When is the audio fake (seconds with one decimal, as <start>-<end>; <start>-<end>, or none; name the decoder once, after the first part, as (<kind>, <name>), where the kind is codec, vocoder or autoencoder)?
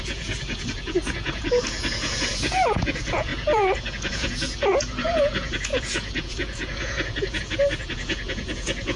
0.0-9.0 (vocoder, Vocos)